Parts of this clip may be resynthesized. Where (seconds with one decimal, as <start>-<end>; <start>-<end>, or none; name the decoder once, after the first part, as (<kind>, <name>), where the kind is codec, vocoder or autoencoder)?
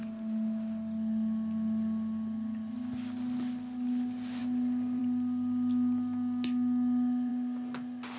none